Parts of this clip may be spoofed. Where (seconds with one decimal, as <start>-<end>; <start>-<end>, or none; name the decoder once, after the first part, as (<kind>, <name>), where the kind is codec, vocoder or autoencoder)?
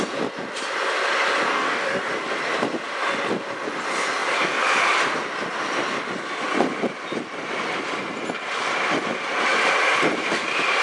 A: 1.5-2.0 (codec, DAC)